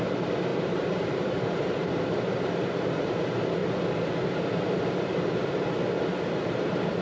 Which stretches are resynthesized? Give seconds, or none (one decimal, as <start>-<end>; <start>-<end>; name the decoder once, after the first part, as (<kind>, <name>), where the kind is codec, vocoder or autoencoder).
0.0-3.6 (vocoder, BigVGAN v2); 6.3-7.0